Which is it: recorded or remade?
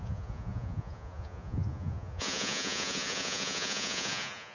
remade